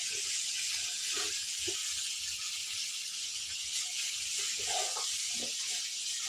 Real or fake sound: fake